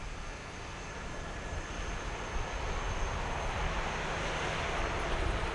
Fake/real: real